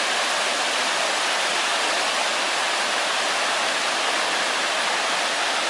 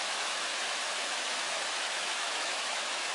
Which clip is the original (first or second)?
first